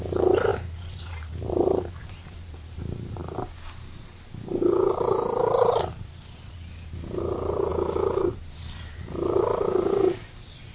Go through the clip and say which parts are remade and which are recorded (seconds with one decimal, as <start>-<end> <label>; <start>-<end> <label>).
0.0-3.2 remade; 3.2-5.9 recorded; 5.9-7.7 remade; 7.7-8.3 recorded; 8.3-10.7 remade

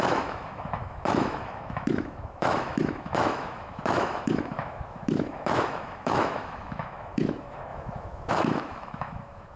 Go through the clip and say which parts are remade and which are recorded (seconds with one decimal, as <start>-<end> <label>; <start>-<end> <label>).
0.0-9.6 remade

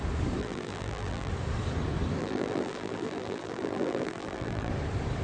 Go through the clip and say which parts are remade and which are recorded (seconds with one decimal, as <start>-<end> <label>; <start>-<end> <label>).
0.0-0.4 recorded; 0.4-1.3 remade; 1.3-2.2 recorded; 2.2-4.7 remade; 4.7-5.2 recorded

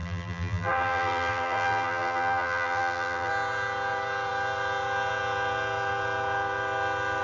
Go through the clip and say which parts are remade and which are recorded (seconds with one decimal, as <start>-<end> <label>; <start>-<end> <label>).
0.0-3.3 remade; 3.3-7.2 recorded

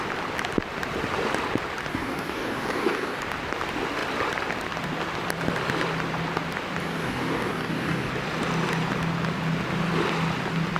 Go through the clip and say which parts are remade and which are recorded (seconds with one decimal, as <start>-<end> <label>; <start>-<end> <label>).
0.0-1.9 recorded; 1.9-3.2 remade; 3.2-6.8 recorded; 6.8-8.1 remade; 8.1-10.8 recorded

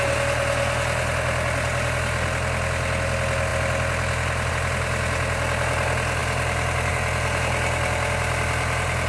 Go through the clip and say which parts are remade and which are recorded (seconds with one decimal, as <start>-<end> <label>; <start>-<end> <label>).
0.0-9.1 recorded